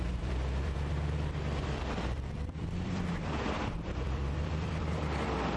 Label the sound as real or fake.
fake